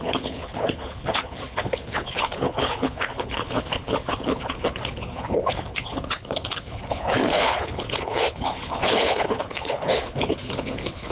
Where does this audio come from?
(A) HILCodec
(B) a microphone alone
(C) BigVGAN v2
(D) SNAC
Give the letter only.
A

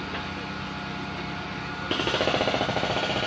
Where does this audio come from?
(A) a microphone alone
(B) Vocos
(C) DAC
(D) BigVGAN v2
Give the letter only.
A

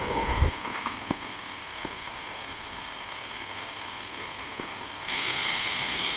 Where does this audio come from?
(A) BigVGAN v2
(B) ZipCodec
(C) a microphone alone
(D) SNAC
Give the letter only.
D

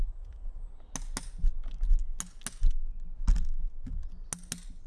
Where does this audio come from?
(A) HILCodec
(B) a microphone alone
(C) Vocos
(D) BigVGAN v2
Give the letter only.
B